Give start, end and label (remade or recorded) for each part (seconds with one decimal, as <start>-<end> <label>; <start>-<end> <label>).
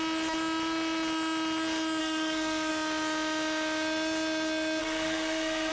0.0-2.0 recorded; 2.0-2.7 remade; 2.7-4.8 recorded; 4.8-5.7 remade